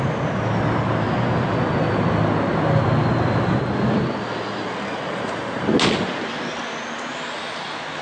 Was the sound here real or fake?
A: real